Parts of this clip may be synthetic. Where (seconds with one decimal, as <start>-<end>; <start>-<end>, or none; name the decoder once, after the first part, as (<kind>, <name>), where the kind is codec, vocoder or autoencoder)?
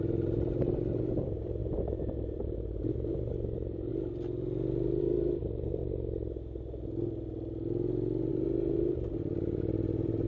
0.0-3.9 (vocoder, BigVGAN v2); 5.0-5.8; 8.3-10.3